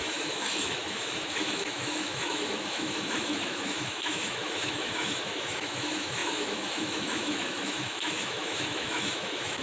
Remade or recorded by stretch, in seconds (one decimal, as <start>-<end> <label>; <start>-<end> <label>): 0.0-9.6 remade